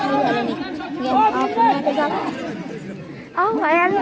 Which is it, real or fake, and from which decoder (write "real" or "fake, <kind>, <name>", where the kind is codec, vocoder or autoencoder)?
real